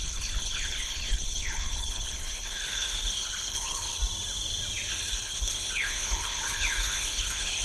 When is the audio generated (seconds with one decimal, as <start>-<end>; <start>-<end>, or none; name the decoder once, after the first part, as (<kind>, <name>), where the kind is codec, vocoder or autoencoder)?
0.0-4.0 (codec, HILCodec); 4.9-7.6